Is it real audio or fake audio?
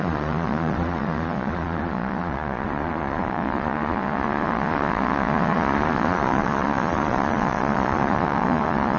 fake